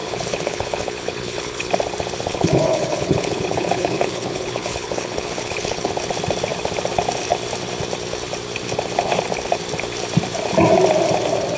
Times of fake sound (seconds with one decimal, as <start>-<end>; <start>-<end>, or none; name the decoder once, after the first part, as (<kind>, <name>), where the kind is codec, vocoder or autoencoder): 0.0-1.7 (codec, HILCodec); 2.3-5.9

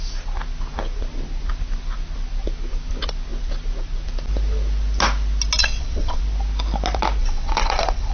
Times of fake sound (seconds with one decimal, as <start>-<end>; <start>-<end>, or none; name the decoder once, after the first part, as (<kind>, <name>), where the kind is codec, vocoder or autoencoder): 5.6-6.2 (vocoder, WaveNeXt); 7.2-8.1